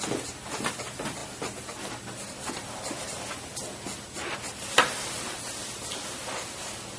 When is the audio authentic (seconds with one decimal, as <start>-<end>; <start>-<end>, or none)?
0.0-7.0